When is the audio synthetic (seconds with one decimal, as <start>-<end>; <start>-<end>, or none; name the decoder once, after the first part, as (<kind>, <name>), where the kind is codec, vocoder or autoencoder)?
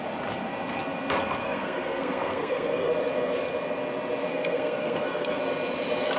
1.4-2.9 (codec, SNAC); 4.3-5.4